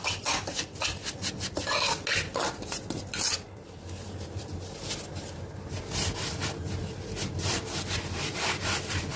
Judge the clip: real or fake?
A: real